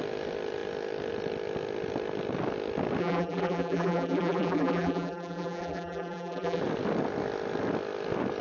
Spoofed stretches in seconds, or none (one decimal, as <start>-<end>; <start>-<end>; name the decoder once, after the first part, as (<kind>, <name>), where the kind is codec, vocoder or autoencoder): 3.0-6.6 (vocoder, BigVGAN v2)